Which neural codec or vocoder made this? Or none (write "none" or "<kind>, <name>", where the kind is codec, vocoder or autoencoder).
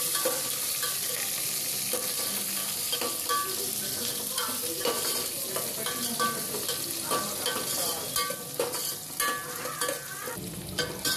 none